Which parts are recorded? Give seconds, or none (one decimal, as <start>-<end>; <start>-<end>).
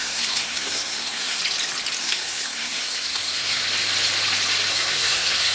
1.4-2.0; 3.6-4.7